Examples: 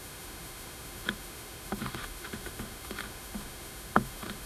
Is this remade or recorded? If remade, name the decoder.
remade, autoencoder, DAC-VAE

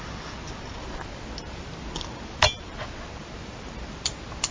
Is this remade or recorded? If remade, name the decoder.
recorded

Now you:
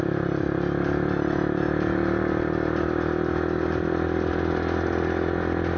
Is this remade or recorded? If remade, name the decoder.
recorded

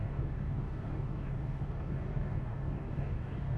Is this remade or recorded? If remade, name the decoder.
remade, codec, DAC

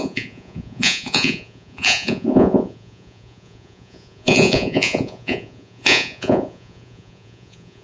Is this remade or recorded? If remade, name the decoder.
remade, vocoder, Vocos